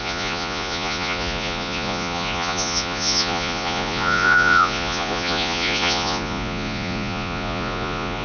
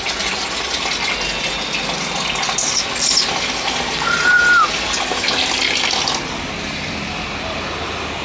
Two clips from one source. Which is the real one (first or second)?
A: second